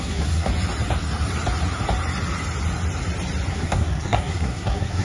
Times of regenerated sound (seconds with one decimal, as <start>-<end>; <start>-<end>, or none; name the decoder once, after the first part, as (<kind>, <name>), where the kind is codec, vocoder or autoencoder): 0.0-0.5 (codec, SNAC); 3.5-5.0